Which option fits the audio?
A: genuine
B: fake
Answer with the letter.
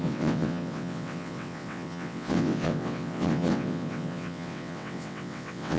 B